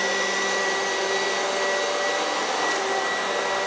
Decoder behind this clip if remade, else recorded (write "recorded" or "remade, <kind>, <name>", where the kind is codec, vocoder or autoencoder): recorded